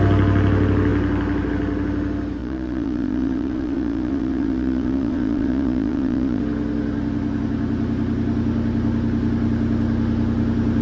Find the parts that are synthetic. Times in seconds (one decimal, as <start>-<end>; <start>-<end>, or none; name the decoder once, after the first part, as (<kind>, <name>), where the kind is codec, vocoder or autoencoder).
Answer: 2.4-6.4 (vocoder, Vocos)